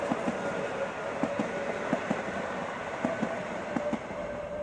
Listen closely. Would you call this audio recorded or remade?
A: recorded